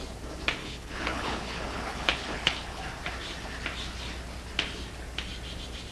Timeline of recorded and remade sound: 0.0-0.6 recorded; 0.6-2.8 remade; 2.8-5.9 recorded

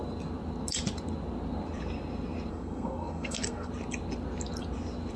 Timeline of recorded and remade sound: 0.0-2.5 recorded; 2.5-3.7 remade; 3.7-5.2 recorded

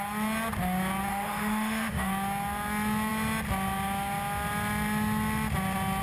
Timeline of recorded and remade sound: 0.0-1.1 recorded; 1.1-2.1 remade; 2.1-6.0 recorded

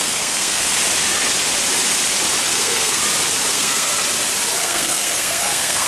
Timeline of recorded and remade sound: 0.0-0.7 remade; 0.7-2.5 recorded; 2.5-3.0 remade; 3.0-3.5 recorded; 3.5-3.9 remade; 3.9-4.6 recorded; 4.6-5.9 remade

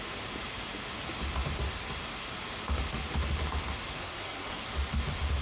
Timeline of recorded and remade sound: 0.0-4.0 recorded; 4.0-4.6 remade; 4.6-5.4 recorded

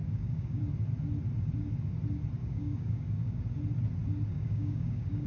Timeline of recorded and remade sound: 0.0-0.6 remade; 0.6-2.4 recorded; 2.4-3.4 remade; 3.4-4.3 recorded; 4.3-5.3 remade